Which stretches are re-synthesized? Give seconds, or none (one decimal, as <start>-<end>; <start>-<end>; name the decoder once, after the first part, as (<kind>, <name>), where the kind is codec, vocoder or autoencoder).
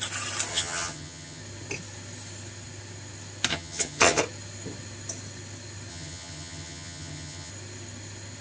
0.5-1.4 (vocoder, HiFi-GAN); 3.5-4.2; 5.9-7.5